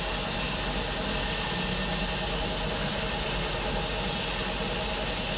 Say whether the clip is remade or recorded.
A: recorded